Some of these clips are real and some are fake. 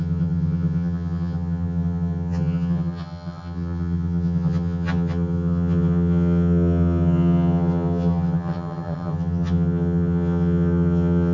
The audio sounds fake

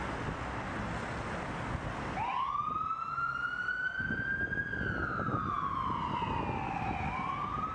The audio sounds real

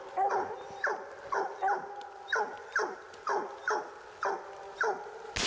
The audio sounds real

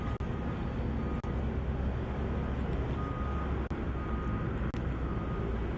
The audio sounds real